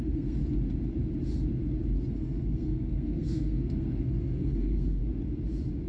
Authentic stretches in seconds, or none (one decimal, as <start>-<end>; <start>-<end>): 0.4-2.1; 5.0-5.9